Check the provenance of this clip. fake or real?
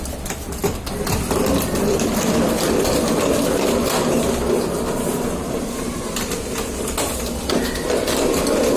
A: real